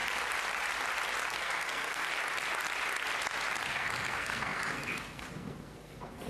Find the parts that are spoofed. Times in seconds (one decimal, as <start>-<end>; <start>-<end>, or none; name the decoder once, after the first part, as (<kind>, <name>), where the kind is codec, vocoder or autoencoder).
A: 1.3-2.0 (codec, SNAC); 3.7-6.3

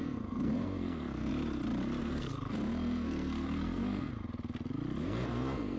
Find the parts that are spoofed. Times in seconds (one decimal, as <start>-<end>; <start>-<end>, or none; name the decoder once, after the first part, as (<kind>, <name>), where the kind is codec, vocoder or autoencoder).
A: 0.0-1.3 (codec, SNAC); 2.0-4.1; 5.0-5.8

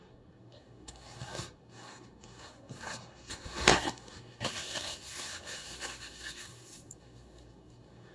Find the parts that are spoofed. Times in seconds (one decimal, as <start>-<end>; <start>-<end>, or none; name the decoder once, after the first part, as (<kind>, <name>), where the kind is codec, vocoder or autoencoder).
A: 0.0-8.1 (codec, SNAC)

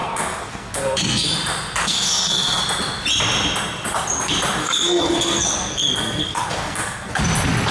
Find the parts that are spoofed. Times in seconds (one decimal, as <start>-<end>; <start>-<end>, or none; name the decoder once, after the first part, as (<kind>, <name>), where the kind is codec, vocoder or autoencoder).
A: 0.0-1.3 (codec, SNAC); 1.8-2.6; 4.6-7.2

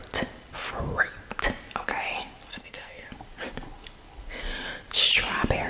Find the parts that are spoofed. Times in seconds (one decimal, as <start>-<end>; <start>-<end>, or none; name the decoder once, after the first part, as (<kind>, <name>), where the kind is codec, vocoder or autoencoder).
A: 2.5-3.1 (codec, SNAC)

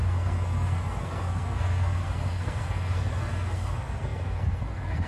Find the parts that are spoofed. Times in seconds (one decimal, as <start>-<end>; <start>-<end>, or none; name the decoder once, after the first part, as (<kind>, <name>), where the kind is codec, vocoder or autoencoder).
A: 0.0-5.1 (codec, SNAC)